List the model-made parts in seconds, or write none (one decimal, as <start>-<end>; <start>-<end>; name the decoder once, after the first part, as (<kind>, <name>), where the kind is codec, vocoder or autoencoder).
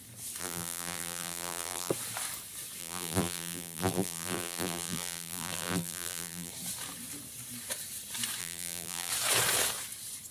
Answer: 0.4-1.9 (vocoder, BigVGAN v2); 2.8-6.5; 8.4-9.1